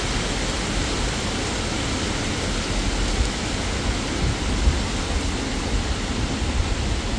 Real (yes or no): yes